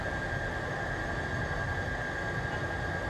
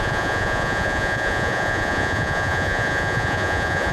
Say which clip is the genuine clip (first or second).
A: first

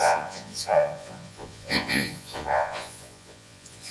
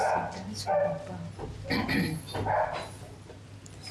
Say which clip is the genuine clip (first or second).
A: second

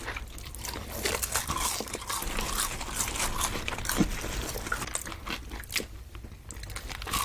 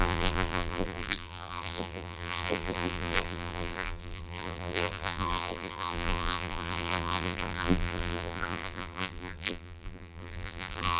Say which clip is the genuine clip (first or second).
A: first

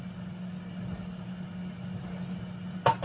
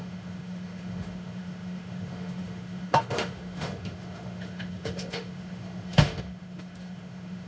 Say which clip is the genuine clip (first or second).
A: first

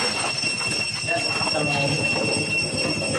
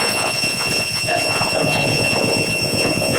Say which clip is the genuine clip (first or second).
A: first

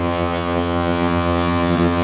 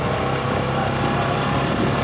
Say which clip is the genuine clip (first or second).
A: second